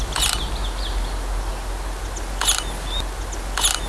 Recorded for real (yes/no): yes